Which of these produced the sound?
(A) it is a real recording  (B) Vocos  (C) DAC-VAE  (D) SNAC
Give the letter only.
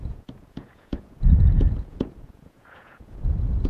B